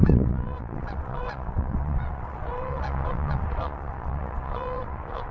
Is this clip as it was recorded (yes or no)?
no